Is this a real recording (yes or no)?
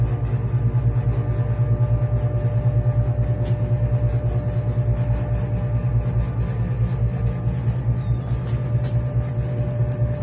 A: yes